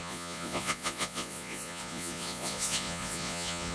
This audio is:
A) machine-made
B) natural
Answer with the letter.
A